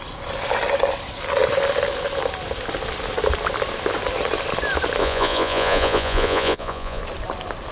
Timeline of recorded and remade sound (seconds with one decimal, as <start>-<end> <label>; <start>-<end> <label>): 0.0-5.0 recorded; 5.0-7.0 remade; 7.0-7.7 recorded